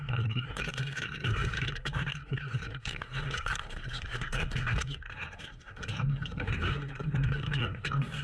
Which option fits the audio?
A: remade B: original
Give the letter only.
A